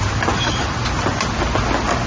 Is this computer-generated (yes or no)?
no